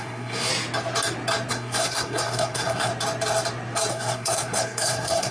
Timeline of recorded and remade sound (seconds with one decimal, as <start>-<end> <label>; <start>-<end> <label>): 0.0-0.5 remade; 0.5-1.5 recorded; 1.5-2.9 remade; 2.9-3.9 recorded; 3.9-5.3 remade